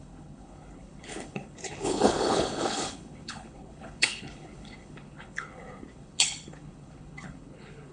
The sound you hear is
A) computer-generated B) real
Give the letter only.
A